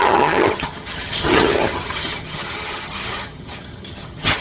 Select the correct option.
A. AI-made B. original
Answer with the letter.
A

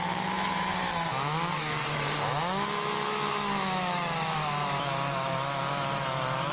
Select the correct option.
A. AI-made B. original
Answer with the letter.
A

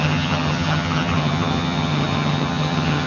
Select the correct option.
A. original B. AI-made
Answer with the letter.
B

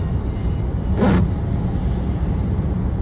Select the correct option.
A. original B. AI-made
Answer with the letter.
A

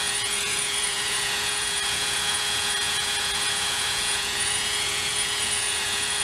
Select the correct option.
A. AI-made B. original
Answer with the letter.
A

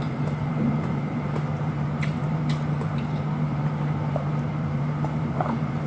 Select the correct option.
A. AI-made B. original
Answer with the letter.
A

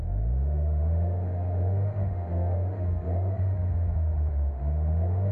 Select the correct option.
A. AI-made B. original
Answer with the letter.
A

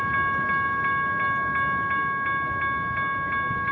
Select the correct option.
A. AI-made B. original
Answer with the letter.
B